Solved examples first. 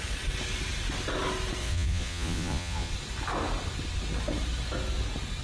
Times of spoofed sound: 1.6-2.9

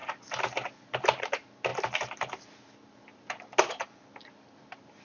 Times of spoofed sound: none

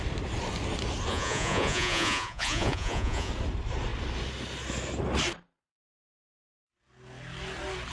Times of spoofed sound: 1.1-3.3

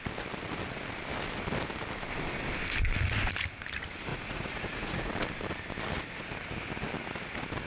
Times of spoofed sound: 4.1-5.1

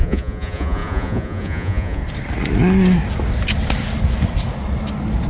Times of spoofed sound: 0.0-2.0

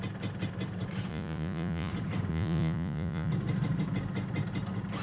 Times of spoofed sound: 1.1-1.9; 2.3-3.3